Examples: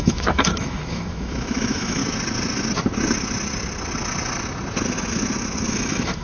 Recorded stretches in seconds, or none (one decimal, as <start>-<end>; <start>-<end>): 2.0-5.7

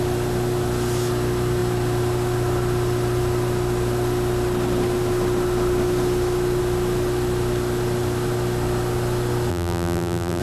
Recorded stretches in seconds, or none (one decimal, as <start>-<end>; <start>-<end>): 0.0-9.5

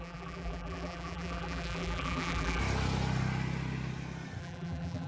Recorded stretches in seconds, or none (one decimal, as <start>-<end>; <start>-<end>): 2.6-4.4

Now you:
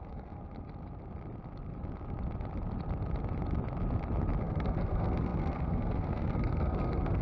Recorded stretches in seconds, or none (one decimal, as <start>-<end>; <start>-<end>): 0.4-4.4